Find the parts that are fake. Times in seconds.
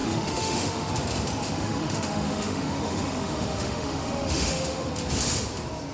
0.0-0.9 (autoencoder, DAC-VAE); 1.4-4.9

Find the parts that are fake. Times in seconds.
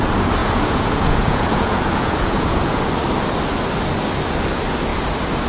0.4-2.9 (vocoder, Vocos)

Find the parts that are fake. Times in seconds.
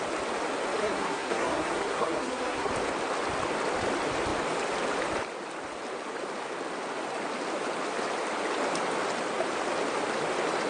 0.8-2.7 (codec, SNAC)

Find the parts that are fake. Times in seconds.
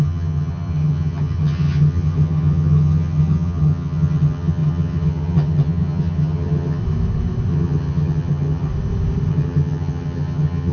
0.0-6.8 (vocoder, HiFi-GAN); 7.5-8.7; 9.3-10.7